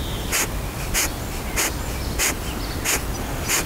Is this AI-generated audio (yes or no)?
no